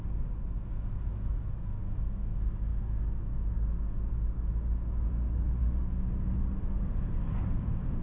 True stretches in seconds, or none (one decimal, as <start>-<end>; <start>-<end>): 0.0-8.0